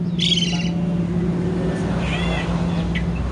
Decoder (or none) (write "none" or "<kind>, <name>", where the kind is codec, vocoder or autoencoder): none